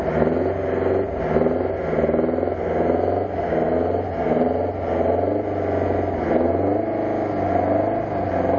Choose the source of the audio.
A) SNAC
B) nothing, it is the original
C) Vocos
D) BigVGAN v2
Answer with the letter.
B